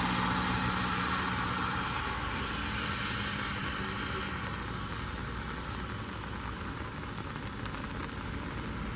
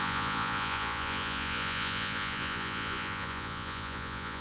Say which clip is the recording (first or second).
first